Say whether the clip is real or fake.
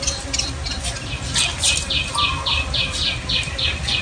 real